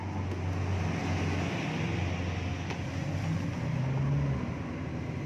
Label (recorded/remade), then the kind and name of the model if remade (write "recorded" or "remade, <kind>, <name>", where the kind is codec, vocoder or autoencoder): recorded